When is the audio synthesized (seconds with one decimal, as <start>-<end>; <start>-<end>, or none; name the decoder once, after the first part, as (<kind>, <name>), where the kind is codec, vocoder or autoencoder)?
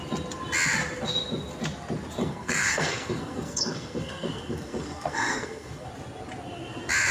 2.2-5.9 (codec, SNAC)